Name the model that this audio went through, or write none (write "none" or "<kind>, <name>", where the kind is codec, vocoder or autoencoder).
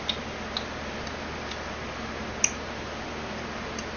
none